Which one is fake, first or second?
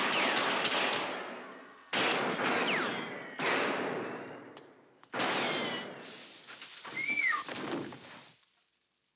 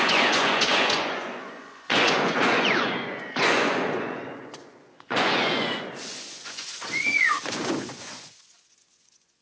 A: second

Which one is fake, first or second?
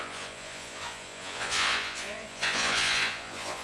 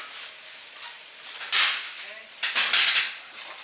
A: first